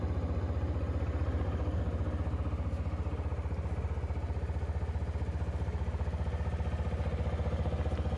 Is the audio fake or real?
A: real